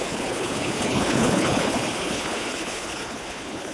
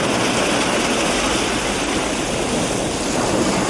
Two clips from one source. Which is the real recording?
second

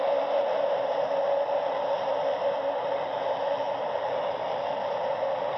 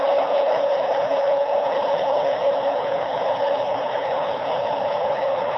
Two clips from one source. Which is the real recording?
first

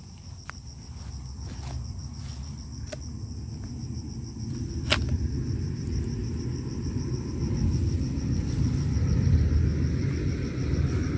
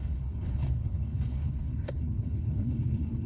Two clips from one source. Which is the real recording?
first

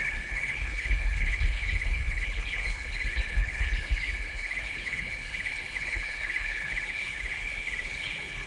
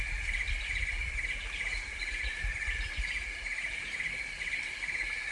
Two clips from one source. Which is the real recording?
second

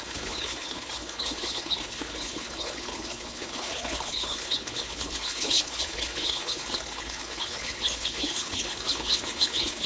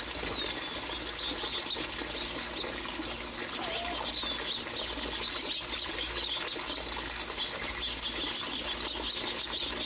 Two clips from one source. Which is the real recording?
second